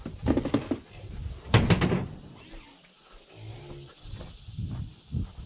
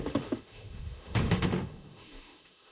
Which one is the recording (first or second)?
first